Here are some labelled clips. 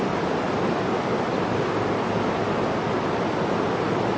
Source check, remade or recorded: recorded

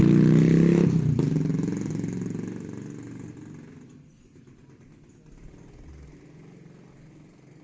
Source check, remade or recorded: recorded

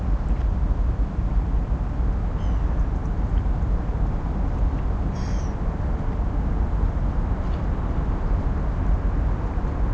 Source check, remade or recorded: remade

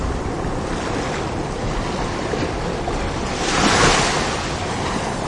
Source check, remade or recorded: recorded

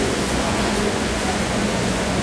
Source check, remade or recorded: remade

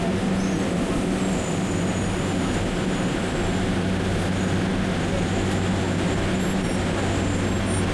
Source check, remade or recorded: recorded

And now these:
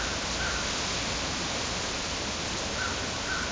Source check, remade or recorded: recorded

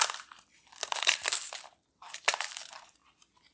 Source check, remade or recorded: remade